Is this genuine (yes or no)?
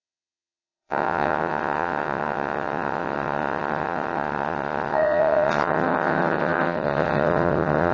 no